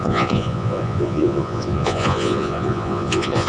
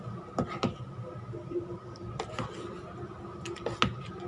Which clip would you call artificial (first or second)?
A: first